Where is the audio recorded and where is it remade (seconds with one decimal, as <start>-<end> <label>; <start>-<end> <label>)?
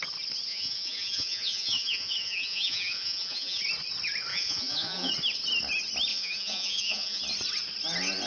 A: 0.0-0.5 recorded; 0.5-3.6 remade; 3.6-4.3 recorded; 4.3-5.1 remade; 5.1-6.1 recorded; 6.1-7.2 remade; 7.2-8.3 recorded